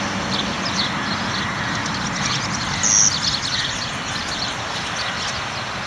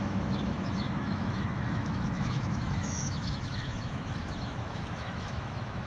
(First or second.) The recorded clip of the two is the first